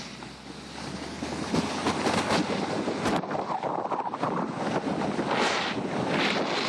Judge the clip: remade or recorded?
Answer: recorded